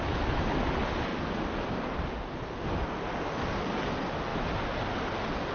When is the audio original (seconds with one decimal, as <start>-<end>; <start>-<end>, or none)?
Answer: 0.0-5.5